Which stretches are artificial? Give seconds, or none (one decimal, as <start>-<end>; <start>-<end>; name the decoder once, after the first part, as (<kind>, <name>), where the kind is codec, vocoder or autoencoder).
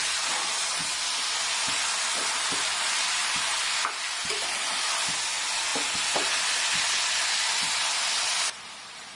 none